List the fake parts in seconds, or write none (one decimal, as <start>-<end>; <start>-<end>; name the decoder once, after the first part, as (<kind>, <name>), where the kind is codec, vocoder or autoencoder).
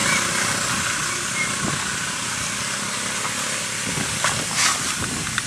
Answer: 0.0-1.7 (vocoder, BigVGAN v2)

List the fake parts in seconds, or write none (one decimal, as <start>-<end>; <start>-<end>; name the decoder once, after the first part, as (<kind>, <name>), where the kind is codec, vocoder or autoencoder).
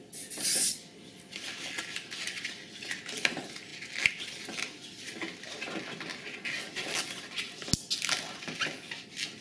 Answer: none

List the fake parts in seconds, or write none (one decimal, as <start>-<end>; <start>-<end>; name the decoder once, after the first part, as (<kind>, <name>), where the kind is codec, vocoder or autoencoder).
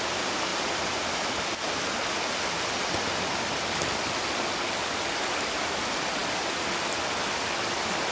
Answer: none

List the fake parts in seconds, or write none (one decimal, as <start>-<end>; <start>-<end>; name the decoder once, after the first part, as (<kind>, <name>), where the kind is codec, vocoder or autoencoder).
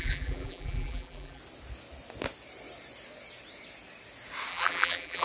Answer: 0.0-1.4 (vocoder, BigVGAN v2); 4.5-5.2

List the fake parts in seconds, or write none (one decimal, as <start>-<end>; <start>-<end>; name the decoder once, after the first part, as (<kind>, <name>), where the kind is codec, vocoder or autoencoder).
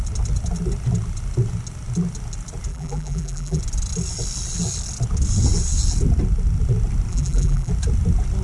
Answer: 2.7-3.6 (vocoder, BigVGAN v2); 7.1-7.7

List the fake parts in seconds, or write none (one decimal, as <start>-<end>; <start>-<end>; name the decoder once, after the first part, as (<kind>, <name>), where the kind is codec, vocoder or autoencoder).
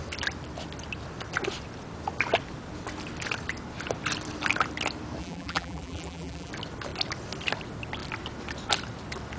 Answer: 5.2-6.5 (vocoder, BigVGAN v2)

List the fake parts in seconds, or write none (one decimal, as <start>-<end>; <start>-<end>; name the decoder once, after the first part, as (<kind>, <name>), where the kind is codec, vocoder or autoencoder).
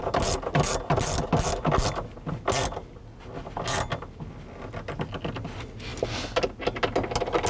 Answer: none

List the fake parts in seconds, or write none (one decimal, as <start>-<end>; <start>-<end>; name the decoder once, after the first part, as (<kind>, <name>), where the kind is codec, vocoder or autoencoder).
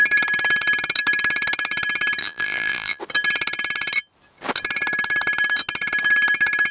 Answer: 2.2-3.0 (vocoder, BigVGAN v2)